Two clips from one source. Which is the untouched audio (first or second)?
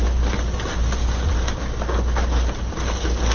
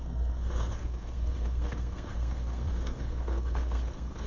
first